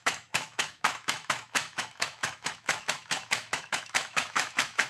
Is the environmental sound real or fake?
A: fake